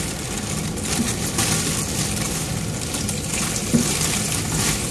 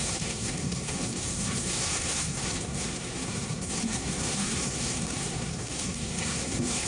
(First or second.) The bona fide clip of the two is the first